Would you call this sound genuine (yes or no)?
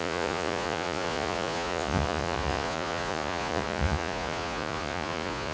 no